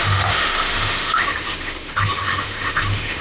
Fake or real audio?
fake